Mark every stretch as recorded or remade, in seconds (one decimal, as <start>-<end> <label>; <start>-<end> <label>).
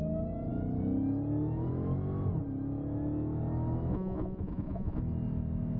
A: 0.0-3.9 recorded; 3.9-5.0 remade; 5.0-5.8 recorded